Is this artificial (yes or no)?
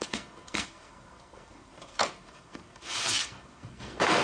yes